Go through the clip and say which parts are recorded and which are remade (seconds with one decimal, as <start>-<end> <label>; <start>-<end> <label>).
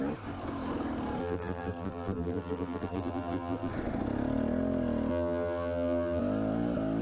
0.0-1.2 recorded; 1.2-3.7 remade; 3.7-5.1 recorded; 5.1-6.2 remade; 6.2-7.0 recorded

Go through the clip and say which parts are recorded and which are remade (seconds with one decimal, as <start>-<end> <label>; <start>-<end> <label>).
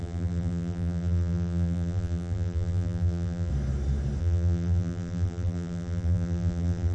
0.0-3.5 remade; 3.5-4.2 recorded; 4.2-6.9 remade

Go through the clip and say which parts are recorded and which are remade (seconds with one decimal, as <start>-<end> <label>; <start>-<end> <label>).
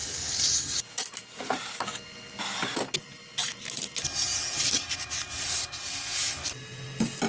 0.0-4.3 recorded; 4.3-5.9 remade; 5.9-7.3 recorded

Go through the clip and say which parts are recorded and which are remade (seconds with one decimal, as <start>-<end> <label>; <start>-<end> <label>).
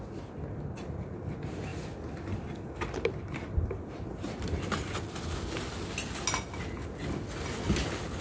0.0-8.2 recorded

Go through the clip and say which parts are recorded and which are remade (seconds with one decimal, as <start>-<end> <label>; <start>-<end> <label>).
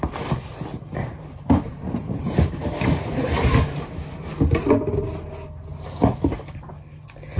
0.0-0.7 recorded; 0.7-4.3 remade; 4.3-5.7 recorded; 5.7-6.6 remade; 6.6-7.4 recorded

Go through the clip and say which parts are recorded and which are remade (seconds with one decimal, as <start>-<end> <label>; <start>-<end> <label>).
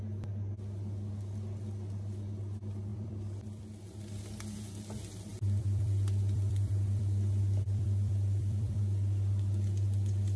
0.0-2.9 recorded; 2.9-3.6 remade; 3.6-5.3 recorded; 5.3-8.8 remade; 8.8-10.4 recorded